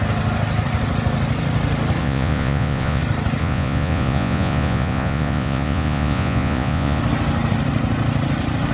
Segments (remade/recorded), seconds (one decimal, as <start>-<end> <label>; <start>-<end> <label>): 0.0-2.0 recorded; 2.0-3.0 remade; 3.0-3.4 recorded; 3.4-7.0 remade; 7.0-8.7 recorded